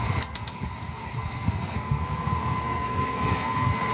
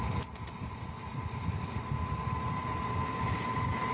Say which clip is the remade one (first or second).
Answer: first